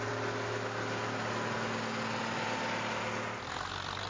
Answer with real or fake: real